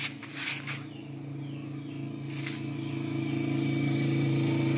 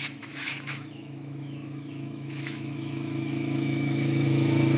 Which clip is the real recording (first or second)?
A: first